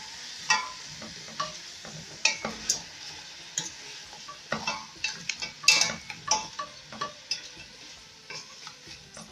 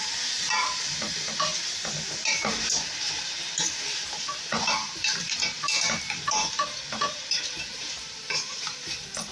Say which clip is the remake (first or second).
second